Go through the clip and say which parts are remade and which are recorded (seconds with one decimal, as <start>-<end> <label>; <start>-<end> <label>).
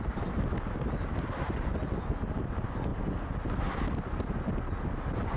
0.0-5.4 recorded